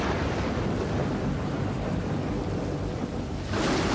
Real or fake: real